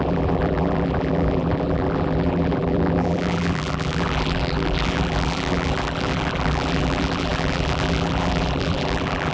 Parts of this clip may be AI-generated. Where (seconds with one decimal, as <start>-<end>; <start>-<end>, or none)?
0.0-9.3